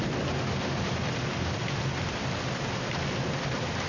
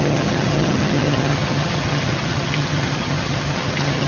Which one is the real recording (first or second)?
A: first